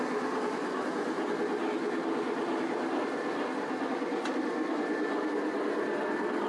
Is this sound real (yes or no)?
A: yes